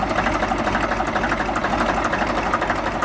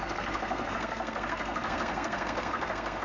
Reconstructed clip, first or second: second